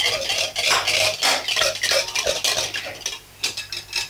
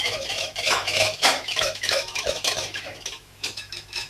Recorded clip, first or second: first